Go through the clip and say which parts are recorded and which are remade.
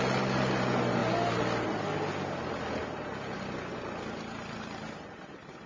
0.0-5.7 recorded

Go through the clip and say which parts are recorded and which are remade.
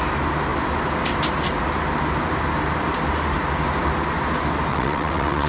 0.0-4.7 recorded; 4.7-5.5 remade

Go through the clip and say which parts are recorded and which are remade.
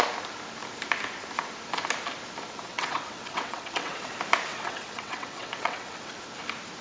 0.0-2.7 recorded; 2.7-4.1 remade; 4.1-4.5 recorded; 4.5-6.1 remade; 6.1-6.8 recorded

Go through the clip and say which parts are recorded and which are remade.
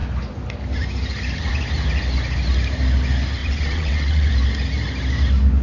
0.0-3.4 recorded; 3.4-4.3 remade; 4.3-5.6 recorded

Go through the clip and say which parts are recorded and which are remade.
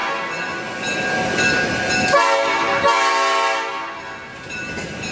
0.0-5.1 recorded